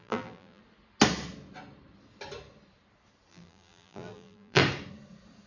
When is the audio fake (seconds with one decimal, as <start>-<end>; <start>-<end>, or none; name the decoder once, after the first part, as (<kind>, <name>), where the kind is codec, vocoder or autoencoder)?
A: 0.0-0.6 (vocoder, BigVGAN v2); 3.3-4.6